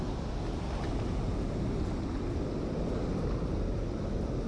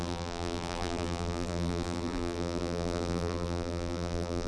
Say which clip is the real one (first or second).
first